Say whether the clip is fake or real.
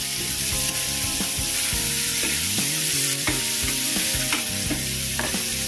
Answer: fake